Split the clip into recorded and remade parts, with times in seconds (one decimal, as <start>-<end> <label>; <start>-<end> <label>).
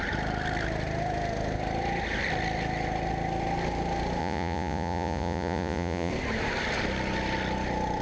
0.0-4.2 recorded; 4.2-6.1 remade; 6.1-8.0 recorded